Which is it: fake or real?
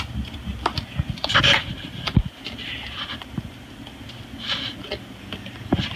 real